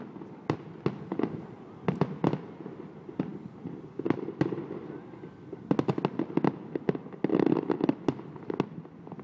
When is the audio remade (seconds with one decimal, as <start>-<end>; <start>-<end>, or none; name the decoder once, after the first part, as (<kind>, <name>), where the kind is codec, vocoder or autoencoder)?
none